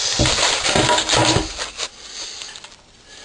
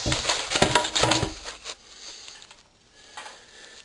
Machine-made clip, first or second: first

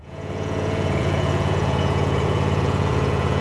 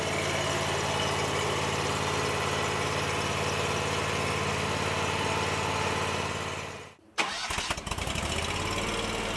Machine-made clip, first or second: first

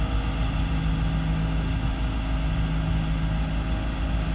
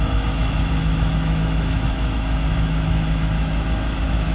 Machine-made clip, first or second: second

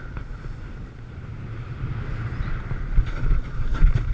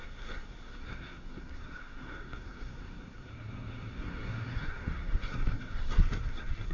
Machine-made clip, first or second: second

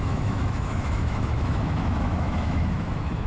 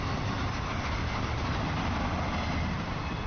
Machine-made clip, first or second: first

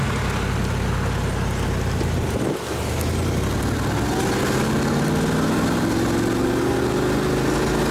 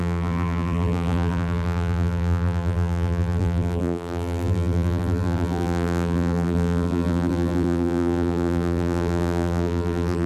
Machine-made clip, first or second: second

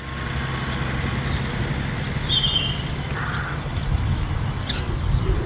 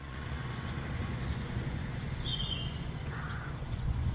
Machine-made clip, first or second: second